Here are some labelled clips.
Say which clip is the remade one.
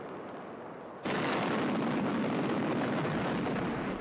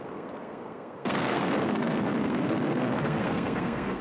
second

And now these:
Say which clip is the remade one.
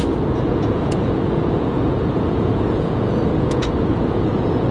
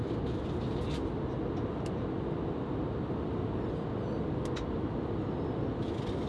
first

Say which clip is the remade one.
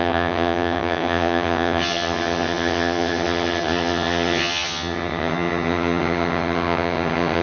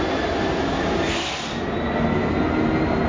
first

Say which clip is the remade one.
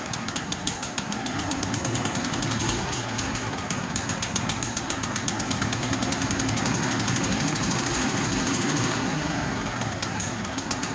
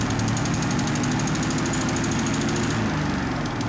first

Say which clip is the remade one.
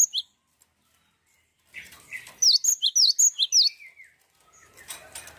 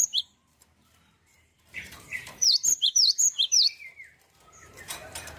second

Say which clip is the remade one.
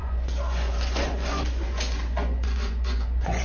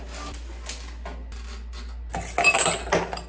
first